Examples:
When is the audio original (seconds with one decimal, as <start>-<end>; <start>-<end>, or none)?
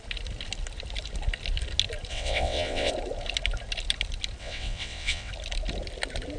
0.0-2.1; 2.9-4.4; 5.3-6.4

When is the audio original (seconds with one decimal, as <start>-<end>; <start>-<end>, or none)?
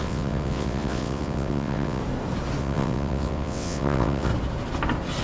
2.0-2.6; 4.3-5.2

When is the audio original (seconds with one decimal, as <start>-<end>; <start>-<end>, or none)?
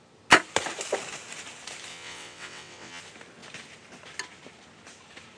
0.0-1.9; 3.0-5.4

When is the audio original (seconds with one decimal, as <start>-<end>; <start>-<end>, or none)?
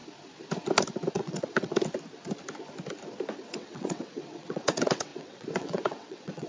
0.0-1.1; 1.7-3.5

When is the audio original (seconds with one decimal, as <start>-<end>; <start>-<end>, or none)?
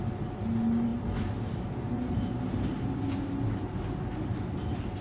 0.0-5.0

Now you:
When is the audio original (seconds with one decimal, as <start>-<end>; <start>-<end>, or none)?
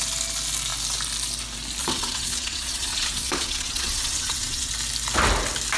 0.0-1.8; 4.7-5.8